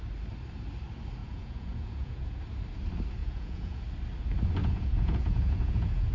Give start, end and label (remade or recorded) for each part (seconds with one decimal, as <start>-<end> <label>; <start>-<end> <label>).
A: 0.0-1.2 recorded; 1.2-2.4 remade; 2.4-3.2 recorded; 3.2-3.8 remade; 3.8-4.6 recorded; 4.6-6.1 remade